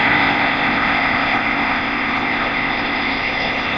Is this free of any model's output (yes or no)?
no